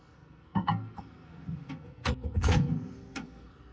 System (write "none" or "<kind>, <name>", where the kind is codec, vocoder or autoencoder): codec, SNAC